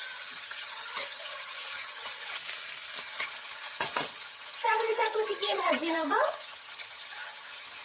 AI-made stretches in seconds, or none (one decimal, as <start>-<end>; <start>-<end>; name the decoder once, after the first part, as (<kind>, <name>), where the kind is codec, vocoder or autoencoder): 0.0-2.4 (vocoder, HiFi-GAN); 3.0-7.8